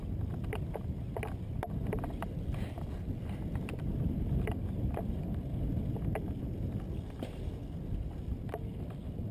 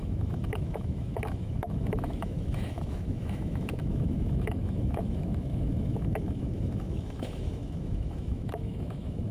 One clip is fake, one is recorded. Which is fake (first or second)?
second